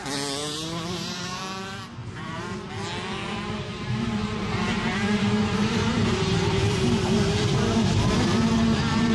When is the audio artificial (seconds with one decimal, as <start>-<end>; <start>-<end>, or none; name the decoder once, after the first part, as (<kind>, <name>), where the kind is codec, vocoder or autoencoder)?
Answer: 0.4-1.4 (vocoder, BigVGAN v2); 2.0-2.7; 3.7-6.3